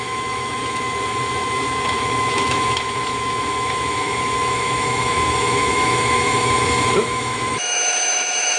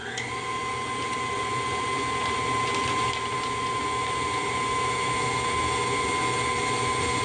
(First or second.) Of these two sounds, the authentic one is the second